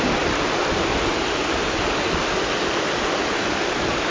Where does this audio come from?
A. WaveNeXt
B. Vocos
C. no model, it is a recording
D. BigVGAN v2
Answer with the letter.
C